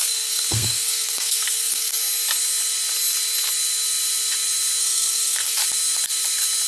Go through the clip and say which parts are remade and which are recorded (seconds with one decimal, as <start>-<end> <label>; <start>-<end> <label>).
0.0-2.0 remade; 2.0-4.8 recorded; 4.8-5.6 remade; 5.6-6.7 recorded